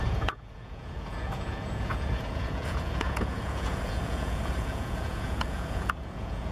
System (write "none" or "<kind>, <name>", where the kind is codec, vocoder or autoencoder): vocoder, Vocos